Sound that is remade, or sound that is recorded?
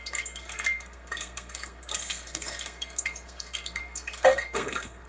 remade